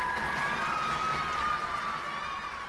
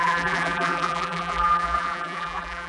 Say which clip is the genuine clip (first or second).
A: first